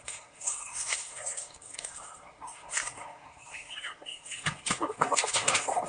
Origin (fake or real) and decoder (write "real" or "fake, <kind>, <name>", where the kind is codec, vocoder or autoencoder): fake, codec, SNAC